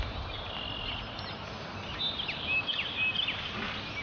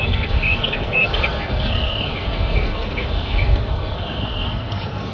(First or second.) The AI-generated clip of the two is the second